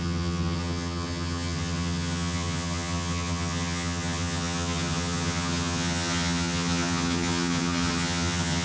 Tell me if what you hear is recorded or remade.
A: remade